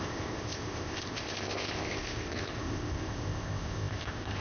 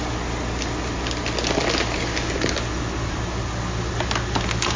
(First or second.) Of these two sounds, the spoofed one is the first